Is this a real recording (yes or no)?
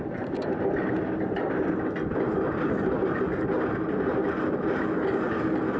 yes